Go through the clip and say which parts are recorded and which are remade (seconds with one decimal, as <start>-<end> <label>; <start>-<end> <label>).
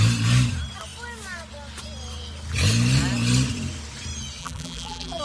0.0-4.4 recorded; 4.4-5.2 remade